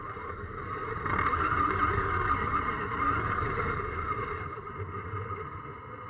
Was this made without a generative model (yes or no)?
yes